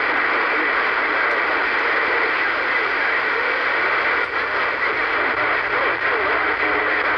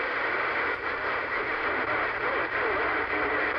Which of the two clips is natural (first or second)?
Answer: first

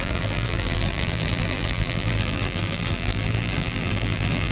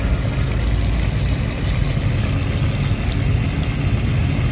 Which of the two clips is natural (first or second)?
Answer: second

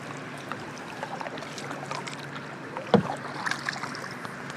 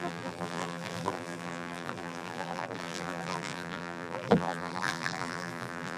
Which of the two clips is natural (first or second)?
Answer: first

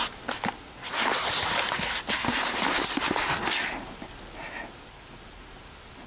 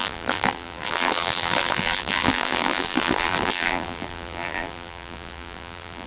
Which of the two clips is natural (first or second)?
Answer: first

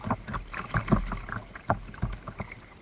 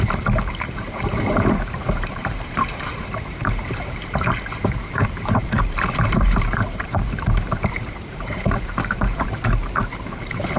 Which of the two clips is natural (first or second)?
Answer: first